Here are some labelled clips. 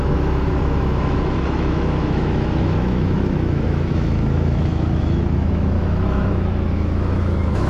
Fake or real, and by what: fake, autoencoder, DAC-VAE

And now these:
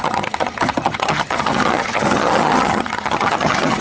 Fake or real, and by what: fake, vocoder, HiFi-GAN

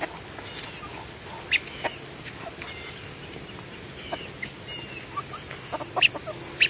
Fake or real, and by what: real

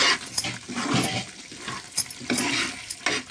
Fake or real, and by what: real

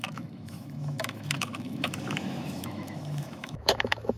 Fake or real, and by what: fake, autoencoder, DAC-VAE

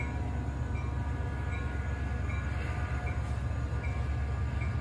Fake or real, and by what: real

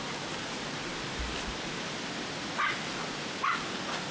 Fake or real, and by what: real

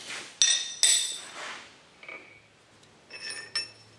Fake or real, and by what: real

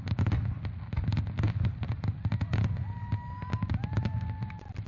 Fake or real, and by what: real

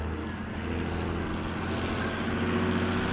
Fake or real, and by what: real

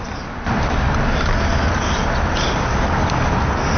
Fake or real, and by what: real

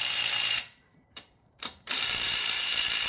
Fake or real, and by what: fake, vocoder, BigVGAN v2